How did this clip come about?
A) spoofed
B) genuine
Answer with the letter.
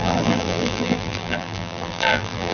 A